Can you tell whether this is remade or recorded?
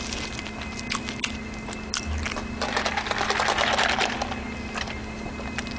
recorded